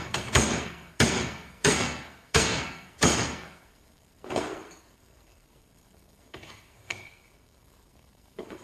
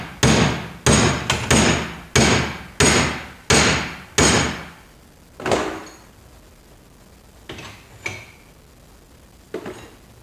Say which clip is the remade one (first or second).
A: first